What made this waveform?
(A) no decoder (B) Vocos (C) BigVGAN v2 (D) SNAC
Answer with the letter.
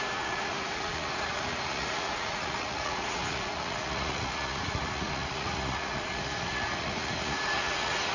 B